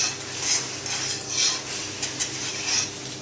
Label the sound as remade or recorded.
recorded